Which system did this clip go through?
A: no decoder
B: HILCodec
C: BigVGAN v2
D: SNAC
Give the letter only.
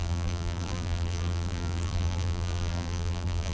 C